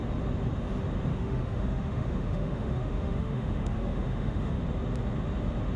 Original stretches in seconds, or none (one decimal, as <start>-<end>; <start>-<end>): 0.0-1.1; 4.6-5.8

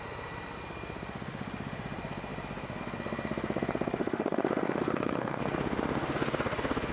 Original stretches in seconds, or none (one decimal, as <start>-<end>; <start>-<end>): 0.0-4.0; 5.4-6.9

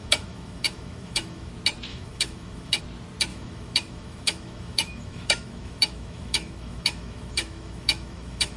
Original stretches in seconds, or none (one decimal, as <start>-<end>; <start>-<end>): 1.5-1.9; 2.8-3.3

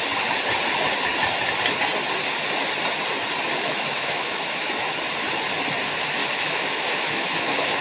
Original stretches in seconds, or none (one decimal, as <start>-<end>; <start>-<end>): 0.0-3.5; 5.0-6.2

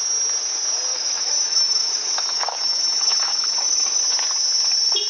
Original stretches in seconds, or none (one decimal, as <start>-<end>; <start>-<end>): 0.0-0.9; 4.0-5.1

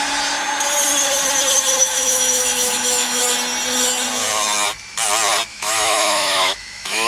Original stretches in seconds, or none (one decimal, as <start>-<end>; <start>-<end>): 0.0-1.8; 3.2-5.5

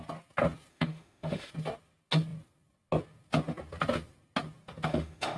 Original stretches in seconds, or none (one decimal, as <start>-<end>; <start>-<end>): 0.0-0.7; 1.5-4.9